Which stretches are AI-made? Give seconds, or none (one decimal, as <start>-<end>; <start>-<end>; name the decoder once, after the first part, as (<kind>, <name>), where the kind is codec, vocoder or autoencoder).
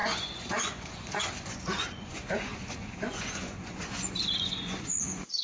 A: 0.0-5.4 (vocoder, Vocos)